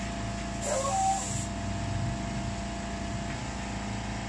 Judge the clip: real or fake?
real